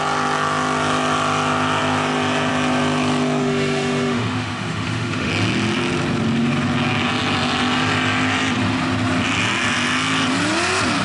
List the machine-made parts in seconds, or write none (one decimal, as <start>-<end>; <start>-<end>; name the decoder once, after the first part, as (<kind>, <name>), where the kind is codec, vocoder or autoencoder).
3.4-5.3 (autoencoder, DAC-VAE)